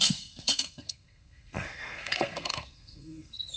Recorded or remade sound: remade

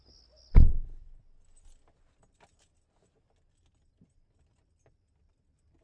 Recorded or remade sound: recorded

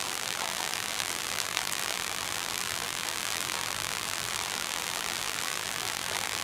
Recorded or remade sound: remade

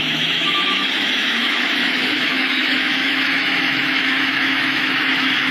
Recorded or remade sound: remade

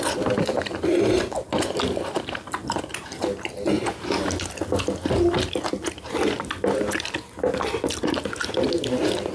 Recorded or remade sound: recorded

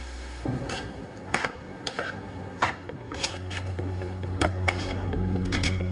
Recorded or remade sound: remade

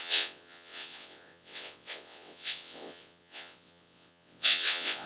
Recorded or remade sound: remade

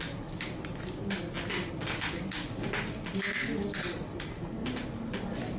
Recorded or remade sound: recorded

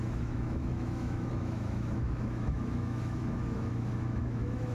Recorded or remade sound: remade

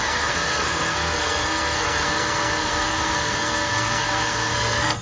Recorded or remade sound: remade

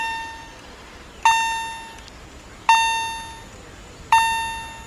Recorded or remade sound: recorded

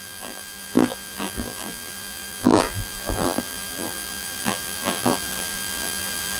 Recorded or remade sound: remade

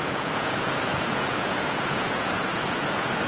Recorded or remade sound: remade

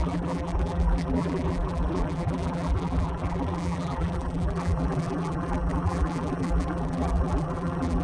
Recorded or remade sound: remade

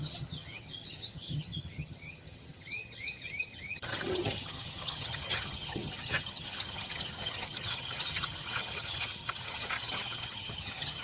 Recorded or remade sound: remade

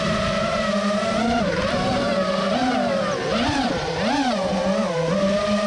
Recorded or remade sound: remade